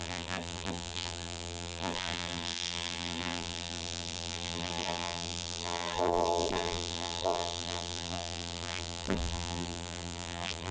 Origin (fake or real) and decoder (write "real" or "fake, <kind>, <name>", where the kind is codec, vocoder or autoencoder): fake, vocoder, BigVGAN v2